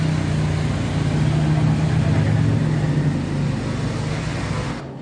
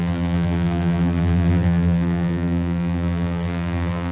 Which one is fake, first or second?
second